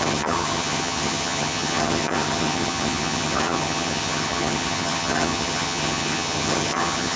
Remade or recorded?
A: remade